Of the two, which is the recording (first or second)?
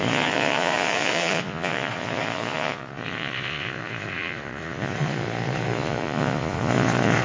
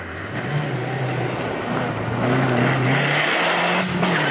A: second